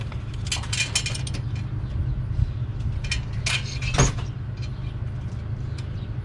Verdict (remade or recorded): recorded